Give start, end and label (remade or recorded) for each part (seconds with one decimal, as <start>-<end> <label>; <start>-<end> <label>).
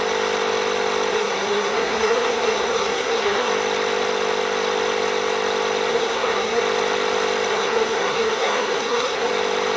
0.0-1.1 recorded; 1.1-3.5 remade; 3.5-5.9 recorded; 5.9-6.6 remade; 6.6-7.5 recorded; 7.5-9.3 remade; 9.3-9.8 recorded